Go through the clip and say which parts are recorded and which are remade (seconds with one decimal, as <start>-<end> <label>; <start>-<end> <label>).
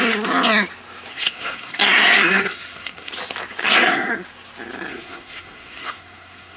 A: 0.0-1.1 recorded; 1.1-3.1 remade; 3.1-3.6 recorded; 3.6-4.1 remade; 4.1-4.9 recorded; 4.9-6.6 remade